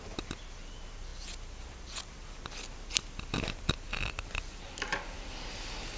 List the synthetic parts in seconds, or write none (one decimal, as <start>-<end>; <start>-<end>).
none